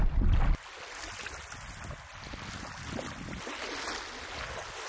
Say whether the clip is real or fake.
real